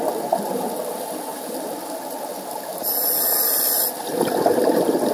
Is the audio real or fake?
real